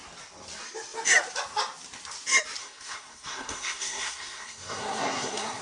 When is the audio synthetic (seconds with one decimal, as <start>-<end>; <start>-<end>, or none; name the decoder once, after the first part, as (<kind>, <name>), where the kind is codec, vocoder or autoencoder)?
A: 2.6-5.6 (codec, SNAC)